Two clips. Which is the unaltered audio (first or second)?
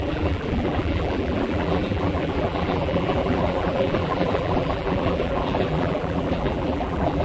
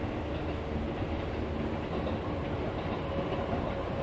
second